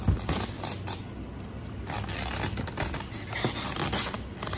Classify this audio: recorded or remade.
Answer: recorded